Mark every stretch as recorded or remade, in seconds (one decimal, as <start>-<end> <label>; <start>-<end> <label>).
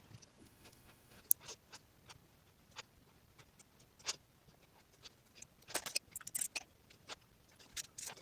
0.0-0.4 recorded; 0.4-1.2 remade; 1.2-8.2 recorded